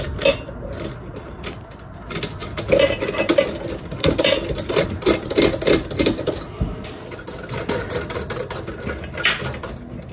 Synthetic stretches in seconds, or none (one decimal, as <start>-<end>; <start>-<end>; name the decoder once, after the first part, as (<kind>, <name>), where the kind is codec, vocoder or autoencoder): 2.4-6.9 (vocoder, BigVGAN v2)